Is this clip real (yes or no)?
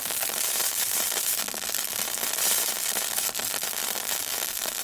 no